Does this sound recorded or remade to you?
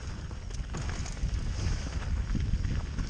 recorded